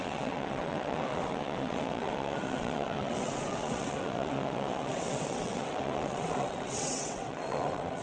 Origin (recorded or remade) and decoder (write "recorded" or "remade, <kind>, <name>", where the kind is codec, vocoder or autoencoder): remade, vocoder, WaveNeXt